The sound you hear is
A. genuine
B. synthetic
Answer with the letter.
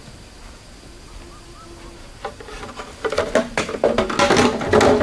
A